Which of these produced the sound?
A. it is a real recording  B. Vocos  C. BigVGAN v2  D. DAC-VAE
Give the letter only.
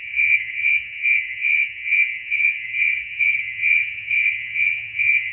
B